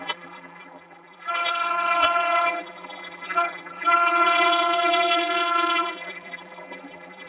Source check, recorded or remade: remade